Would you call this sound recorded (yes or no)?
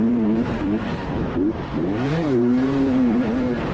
no